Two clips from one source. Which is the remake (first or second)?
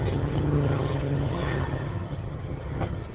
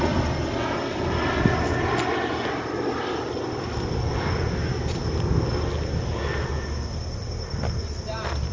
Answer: first